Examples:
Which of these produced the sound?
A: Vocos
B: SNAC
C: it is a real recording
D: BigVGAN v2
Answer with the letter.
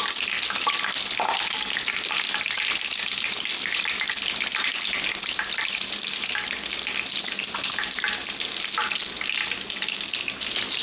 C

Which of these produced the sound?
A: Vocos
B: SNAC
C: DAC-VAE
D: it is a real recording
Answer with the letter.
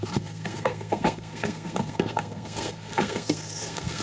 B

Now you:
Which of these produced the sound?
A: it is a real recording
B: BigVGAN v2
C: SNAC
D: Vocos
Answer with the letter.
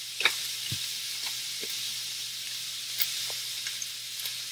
A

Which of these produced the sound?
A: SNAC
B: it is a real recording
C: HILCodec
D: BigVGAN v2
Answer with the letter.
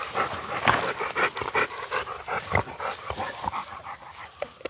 B